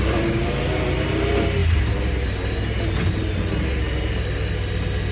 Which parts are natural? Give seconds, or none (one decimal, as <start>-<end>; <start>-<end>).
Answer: 0.0-5.1